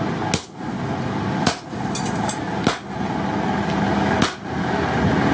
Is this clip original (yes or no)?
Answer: yes